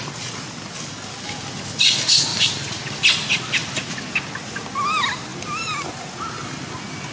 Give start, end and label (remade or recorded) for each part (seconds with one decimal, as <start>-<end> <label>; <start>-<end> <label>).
0.0-2.3 recorded; 2.3-3.0 remade; 3.0-3.6 recorded; 3.6-4.1 remade; 4.1-7.1 recorded

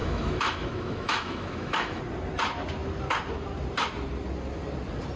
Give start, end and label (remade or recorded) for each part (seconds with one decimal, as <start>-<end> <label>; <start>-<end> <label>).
0.0-2.0 remade; 2.0-5.2 recorded